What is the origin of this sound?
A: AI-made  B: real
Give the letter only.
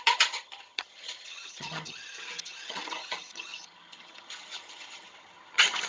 A